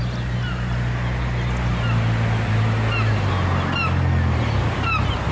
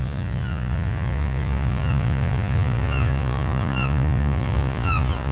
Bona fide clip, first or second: first